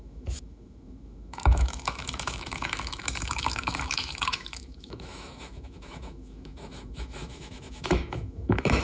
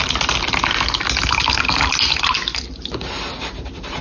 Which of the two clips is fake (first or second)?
first